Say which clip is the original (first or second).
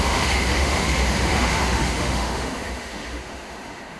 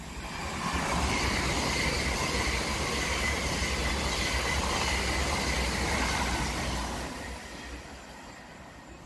second